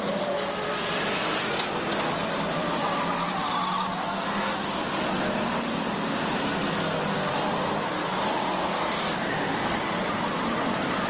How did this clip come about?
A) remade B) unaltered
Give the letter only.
B